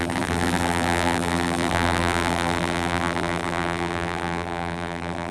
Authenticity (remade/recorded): remade